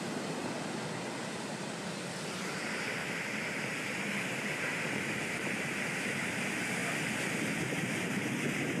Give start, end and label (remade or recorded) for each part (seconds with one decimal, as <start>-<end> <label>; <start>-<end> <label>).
0.0-3.0 recorded; 3.0-5.8 remade; 5.8-8.8 recorded